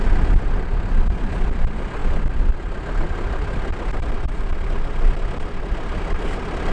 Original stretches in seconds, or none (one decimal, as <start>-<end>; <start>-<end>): 0.0-6.7